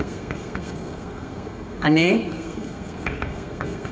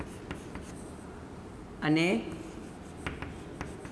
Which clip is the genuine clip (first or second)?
second